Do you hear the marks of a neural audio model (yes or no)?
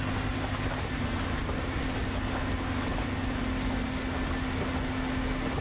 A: no